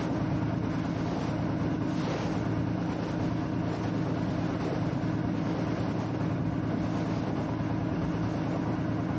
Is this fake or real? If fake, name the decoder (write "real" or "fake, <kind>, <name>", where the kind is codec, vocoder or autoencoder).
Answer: real